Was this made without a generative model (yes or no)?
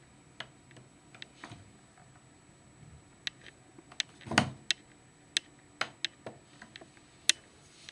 yes